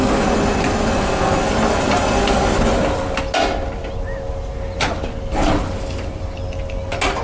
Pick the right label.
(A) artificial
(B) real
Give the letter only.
B